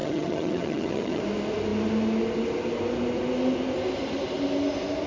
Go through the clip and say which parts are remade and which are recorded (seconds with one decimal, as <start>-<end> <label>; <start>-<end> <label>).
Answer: 0.0-1.2 remade; 1.2-5.1 recorded